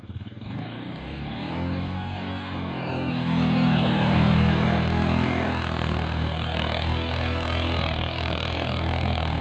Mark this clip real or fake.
fake